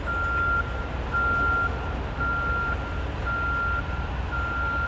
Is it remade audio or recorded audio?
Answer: recorded